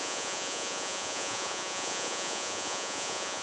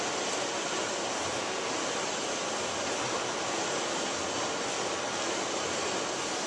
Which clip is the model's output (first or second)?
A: first